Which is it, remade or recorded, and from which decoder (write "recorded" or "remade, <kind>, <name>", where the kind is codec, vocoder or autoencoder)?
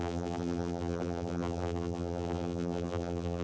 remade, vocoder, BigVGAN v2